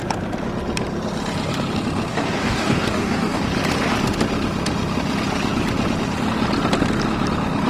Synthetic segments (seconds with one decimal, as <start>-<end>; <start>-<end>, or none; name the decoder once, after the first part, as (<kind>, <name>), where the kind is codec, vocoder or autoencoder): 2.1-3.4 (codec, DAC)